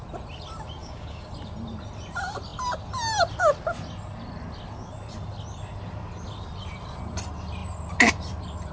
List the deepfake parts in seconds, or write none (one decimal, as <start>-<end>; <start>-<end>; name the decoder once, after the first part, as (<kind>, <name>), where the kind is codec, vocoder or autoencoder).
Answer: 0.8-1.3 (codec, DAC)